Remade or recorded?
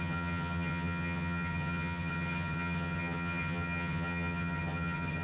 remade